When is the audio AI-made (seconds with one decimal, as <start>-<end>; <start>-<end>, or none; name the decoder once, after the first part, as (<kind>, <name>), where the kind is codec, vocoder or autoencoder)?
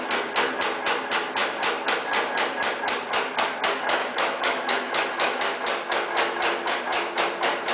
4.0-5.4 (autoencoder, DAC-VAE)